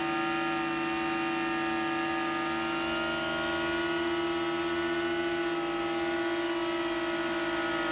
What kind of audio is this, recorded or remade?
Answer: recorded